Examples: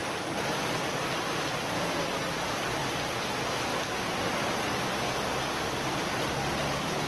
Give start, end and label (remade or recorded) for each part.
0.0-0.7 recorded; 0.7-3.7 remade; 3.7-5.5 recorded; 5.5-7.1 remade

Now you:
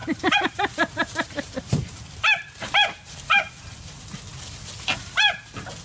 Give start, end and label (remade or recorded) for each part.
0.0-3.5 remade; 3.5-5.8 recorded

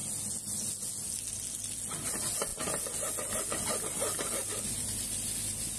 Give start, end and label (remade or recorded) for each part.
0.0-5.8 recorded

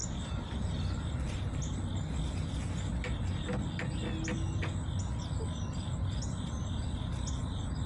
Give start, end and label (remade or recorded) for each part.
0.0-0.6 remade; 0.6-7.9 recorded

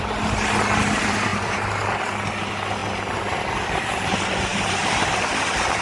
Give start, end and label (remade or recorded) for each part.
0.0-1.3 recorded; 1.3-1.8 remade; 1.8-4.5 recorded; 4.5-5.1 remade; 5.1-5.8 recorded

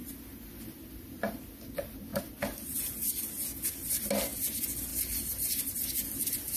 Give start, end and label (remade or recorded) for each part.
0.0-4.9 recorded; 4.9-5.6 remade; 5.6-6.6 recorded